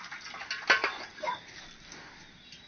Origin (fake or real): real